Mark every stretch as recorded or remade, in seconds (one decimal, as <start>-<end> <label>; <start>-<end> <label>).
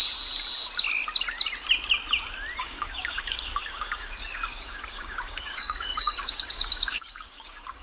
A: 0.0-2.6 recorded; 2.6-7.8 remade